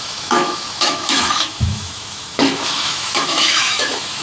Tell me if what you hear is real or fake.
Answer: fake